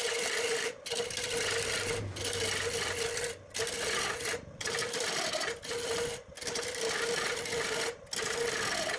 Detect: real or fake real